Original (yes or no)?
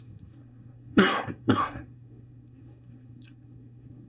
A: no